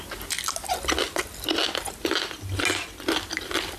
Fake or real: real